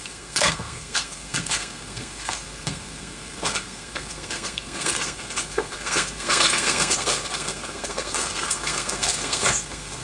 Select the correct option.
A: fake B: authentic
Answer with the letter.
A